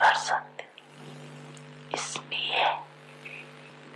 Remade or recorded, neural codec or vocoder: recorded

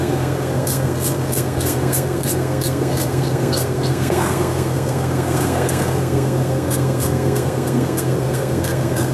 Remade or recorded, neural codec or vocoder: remade, codec, SNAC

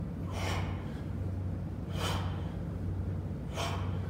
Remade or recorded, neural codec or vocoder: recorded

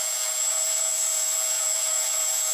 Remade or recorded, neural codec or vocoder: remade, vocoder, Vocos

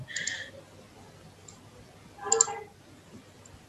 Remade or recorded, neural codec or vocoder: recorded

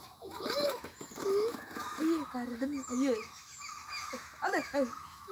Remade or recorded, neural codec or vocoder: remade, autoencoder, DAC-VAE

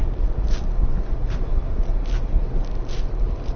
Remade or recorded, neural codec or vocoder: recorded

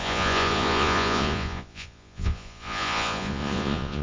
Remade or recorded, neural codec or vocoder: remade, vocoder, Vocos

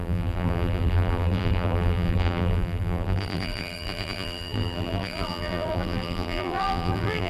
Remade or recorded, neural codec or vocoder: remade, vocoder, BigVGAN v2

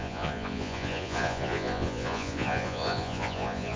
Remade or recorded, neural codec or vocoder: remade, vocoder, Vocos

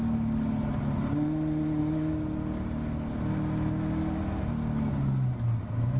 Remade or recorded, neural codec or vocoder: recorded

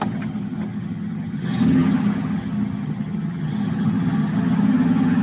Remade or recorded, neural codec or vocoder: remade, vocoder, HiFi-GAN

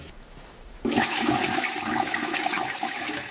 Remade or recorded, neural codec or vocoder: remade, autoencoder, DAC-VAE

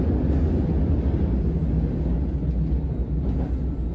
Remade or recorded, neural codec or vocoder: recorded